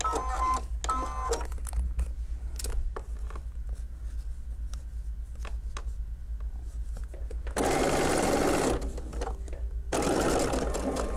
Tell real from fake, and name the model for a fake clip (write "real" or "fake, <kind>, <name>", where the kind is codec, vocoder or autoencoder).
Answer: real